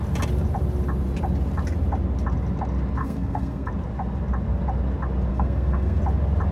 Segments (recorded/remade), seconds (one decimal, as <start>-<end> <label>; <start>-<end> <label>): 0.0-3.0 recorded; 3.0-3.7 remade; 3.7-5.3 recorded; 5.3-6.0 remade; 6.0-6.5 recorded